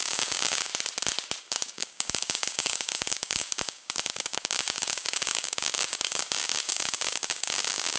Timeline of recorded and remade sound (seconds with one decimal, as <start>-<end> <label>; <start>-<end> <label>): 0.0-0.7 remade; 0.7-1.4 recorded; 1.4-8.0 remade